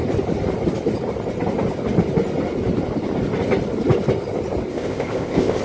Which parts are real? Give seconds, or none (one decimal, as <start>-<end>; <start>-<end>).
0.0-4.7